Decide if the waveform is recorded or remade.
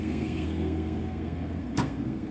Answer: remade